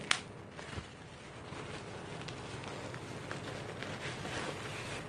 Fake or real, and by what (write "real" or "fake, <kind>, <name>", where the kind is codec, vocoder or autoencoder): real